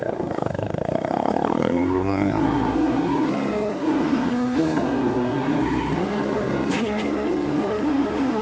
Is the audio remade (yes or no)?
yes